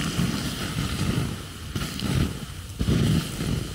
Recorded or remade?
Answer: recorded